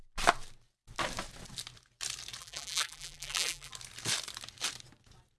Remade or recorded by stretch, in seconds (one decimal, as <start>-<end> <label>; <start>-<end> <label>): 0.0-2.4 recorded; 2.4-3.7 remade; 3.7-5.4 recorded